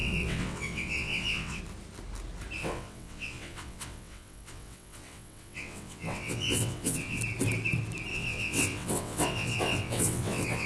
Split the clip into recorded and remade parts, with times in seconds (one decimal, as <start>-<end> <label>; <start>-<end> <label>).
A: 0.0-1.6 remade; 1.6-2.6 recorded; 2.6-7.2 remade; 7.2-8.1 recorded; 8.1-10.7 remade

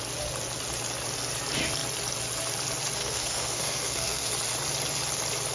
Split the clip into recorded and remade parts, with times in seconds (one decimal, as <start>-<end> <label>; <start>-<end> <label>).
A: 0.0-3.0 recorded; 3.0-4.3 remade; 4.3-5.5 recorded

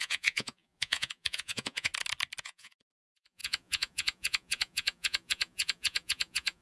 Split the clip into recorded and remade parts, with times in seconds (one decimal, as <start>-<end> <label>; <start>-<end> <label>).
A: 0.0-1.9 remade; 1.9-2.4 recorded; 2.4-6.6 remade

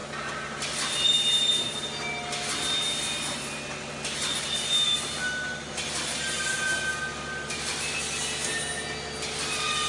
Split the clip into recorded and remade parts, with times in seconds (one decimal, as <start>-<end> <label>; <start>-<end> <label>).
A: 0.0-9.9 recorded